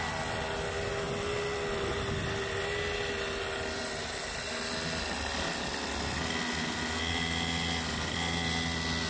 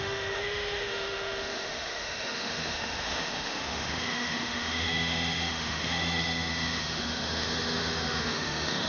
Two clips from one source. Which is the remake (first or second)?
second